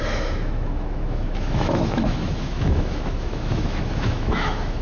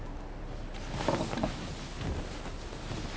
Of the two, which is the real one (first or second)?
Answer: second